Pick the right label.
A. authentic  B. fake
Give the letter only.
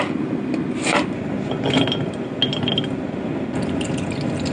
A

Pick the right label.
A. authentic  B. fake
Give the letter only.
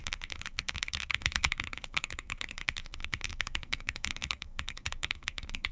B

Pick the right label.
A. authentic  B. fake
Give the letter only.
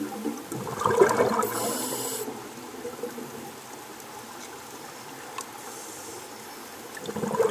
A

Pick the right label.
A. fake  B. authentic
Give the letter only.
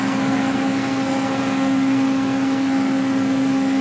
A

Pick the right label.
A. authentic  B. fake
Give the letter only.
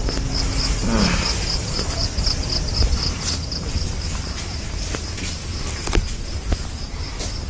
A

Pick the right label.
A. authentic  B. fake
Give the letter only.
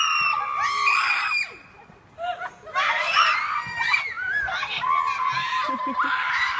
A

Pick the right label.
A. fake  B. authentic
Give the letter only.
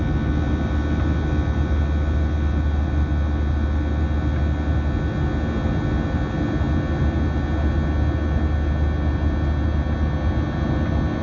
B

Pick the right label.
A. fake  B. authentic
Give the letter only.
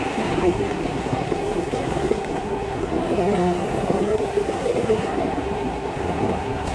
A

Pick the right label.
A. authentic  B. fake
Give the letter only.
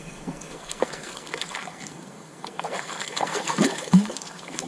B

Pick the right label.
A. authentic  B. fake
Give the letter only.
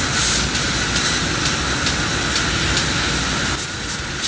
A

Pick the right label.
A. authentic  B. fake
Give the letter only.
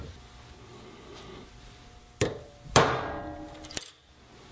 A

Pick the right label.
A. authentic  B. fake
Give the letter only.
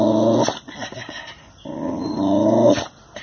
A